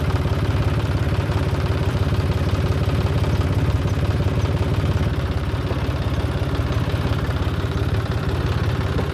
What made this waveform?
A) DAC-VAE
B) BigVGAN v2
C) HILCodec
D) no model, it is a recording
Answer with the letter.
B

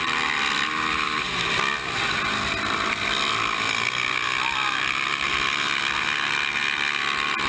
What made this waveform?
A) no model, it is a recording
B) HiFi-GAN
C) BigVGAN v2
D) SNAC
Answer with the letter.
A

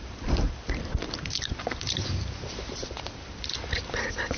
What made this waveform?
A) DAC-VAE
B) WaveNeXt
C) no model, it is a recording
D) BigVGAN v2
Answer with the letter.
D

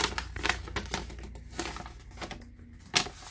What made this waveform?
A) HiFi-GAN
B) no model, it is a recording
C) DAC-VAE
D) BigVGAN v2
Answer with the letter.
B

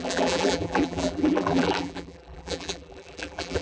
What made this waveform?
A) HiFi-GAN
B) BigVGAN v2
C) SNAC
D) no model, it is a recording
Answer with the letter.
B